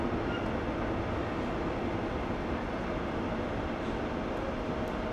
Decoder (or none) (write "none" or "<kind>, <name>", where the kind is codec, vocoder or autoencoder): none